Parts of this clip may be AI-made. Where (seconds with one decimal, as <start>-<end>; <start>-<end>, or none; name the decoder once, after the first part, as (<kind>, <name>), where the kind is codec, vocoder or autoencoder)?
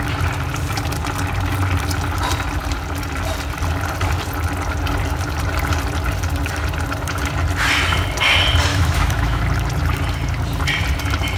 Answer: 8.7-9.4 (autoencoder, DAC-VAE)